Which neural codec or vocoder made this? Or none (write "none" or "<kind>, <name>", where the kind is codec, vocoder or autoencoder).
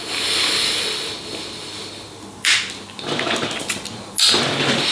none